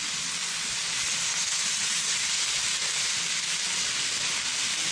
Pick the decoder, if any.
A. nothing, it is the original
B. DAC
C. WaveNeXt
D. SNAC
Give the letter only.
A